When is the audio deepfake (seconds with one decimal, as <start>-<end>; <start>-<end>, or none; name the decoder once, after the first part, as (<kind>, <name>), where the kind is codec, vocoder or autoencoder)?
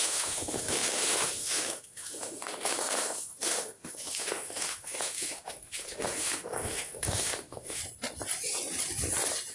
0.0-7.8 (autoencoder, DAC-VAE)